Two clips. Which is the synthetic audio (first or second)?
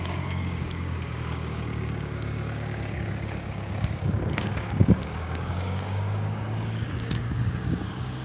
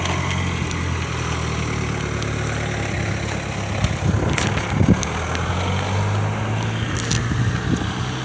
first